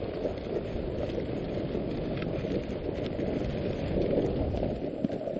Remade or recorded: recorded